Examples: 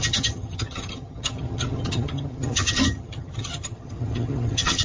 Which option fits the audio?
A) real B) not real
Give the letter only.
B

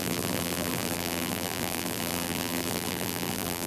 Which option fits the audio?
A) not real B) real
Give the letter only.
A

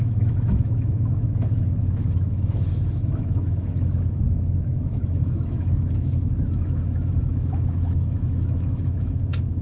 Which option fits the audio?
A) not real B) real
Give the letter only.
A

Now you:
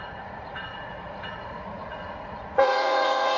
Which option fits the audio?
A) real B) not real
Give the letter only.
B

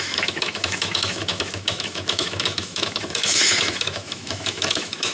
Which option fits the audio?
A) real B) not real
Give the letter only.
B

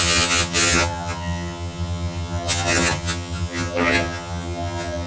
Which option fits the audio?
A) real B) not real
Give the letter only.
B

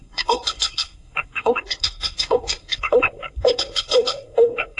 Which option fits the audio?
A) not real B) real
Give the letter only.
A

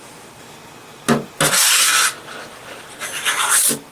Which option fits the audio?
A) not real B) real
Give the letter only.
B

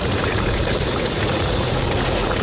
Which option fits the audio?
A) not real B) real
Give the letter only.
A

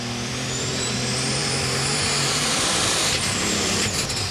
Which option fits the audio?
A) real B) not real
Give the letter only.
B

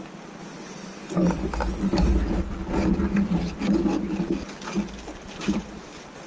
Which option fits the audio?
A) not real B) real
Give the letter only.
B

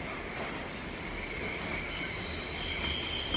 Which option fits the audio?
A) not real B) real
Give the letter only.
B